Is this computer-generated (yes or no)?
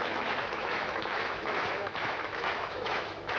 yes